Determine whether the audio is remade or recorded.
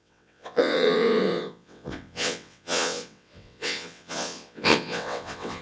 remade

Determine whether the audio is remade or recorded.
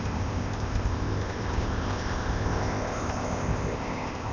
remade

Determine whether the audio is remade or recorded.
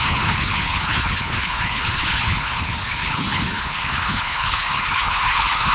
remade